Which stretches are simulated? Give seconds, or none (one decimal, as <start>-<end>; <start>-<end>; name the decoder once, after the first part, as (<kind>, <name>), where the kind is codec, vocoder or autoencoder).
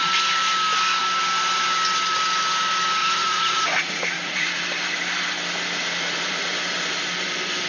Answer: 3.0-4.6 (vocoder, Vocos); 5.8-6.5